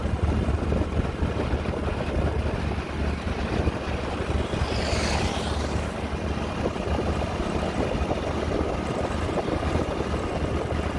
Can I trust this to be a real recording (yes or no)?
yes